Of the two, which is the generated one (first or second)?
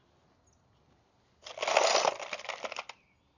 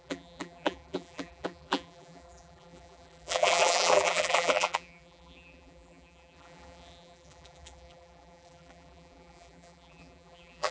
second